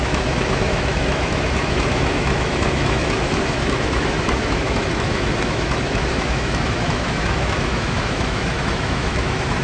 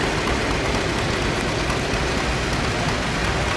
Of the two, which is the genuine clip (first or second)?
second